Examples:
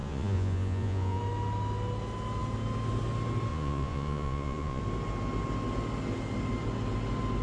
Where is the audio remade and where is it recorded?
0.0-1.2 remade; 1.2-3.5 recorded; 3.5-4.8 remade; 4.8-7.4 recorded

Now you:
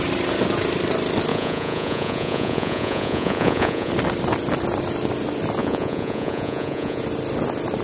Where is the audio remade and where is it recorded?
0.0-1.3 recorded; 1.3-3.9 remade; 3.9-5.6 recorded; 5.6-7.0 remade; 7.0-7.8 recorded

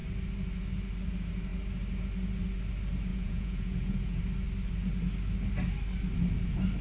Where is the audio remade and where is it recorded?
0.0-3.1 recorded; 3.1-4.2 remade; 4.2-6.8 recorded

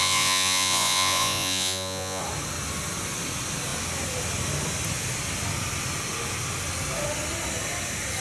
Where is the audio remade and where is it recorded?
0.0-2.2 remade; 2.2-8.2 recorded